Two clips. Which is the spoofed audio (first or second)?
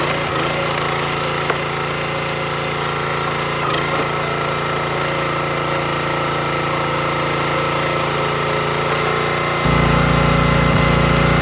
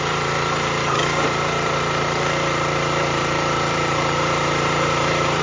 second